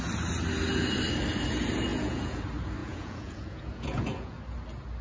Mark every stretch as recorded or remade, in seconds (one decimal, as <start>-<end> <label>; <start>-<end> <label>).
0.0-1.9 recorded; 1.9-2.4 remade; 2.4-2.8 recorded; 2.8-4.4 remade; 4.4-5.0 recorded